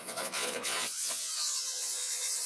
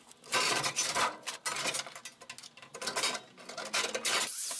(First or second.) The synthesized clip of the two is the first